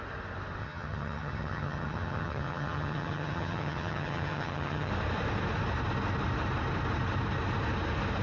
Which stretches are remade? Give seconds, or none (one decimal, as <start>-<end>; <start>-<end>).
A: 0.6-4.9